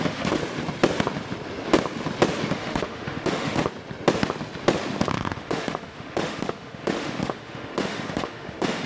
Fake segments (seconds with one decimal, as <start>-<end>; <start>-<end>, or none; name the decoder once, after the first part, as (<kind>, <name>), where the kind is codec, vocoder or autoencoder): 0.0-0.4 (autoencoder, DAC-VAE); 2.5-3.6; 5.1-8.9